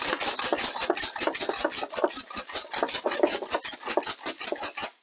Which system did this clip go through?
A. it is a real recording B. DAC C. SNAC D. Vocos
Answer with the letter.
A